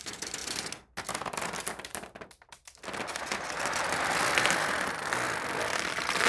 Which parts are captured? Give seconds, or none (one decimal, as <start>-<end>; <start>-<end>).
0.0-6.3